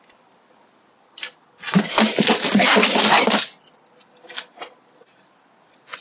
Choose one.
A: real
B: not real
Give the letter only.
A